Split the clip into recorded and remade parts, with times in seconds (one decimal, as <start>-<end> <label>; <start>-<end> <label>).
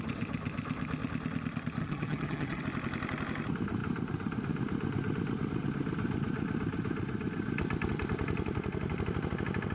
0.0-1.8 recorded; 1.8-2.6 remade; 2.6-9.7 recorded